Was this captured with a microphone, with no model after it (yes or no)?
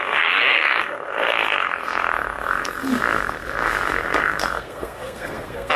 no